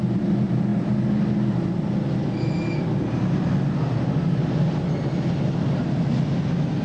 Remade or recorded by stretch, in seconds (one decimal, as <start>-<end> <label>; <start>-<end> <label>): 0.0-6.8 recorded